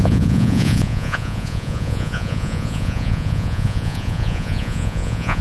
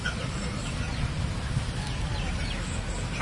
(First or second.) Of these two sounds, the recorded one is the second